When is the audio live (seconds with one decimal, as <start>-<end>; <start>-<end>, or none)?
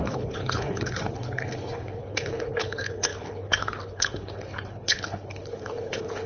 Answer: none